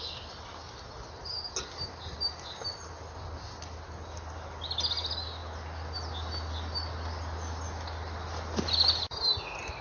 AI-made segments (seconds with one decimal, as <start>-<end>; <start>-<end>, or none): none